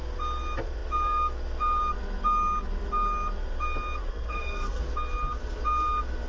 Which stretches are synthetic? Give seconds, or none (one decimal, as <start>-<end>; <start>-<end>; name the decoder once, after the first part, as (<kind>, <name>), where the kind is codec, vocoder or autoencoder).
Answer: 4.1-4.8 (codec, SNAC)